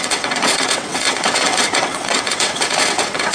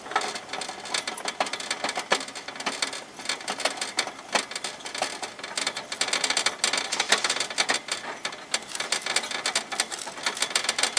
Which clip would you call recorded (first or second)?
second